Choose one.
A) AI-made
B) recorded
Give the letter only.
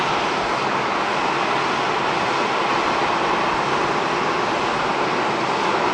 B